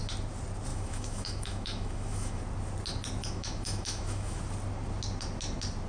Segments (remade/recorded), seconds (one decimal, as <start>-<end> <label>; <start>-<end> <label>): 0.0-0.7 recorded; 0.7-2.4 remade; 2.4-3.2 recorded; 3.2-4.4 remade; 4.4-5.9 recorded

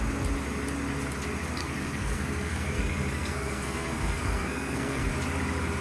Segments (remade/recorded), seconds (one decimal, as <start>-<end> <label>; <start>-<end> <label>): 0.0-1.6 recorded; 1.6-5.1 remade; 5.1-5.8 recorded